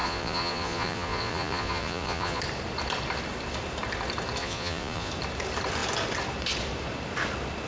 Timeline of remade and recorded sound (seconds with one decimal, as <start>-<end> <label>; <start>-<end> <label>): 0.0-2.4 remade; 2.4-4.4 recorded; 4.4-5.1 remade; 5.1-7.7 recorded